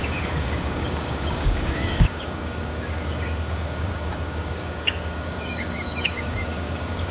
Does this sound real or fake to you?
fake